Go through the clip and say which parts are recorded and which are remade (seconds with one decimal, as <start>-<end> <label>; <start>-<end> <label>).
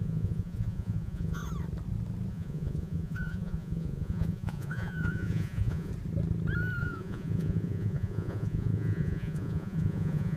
0.0-1.4 remade; 1.4-2.3 recorded; 2.3-5.9 remade; 5.9-6.8 recorded; 6.8-10.4 remade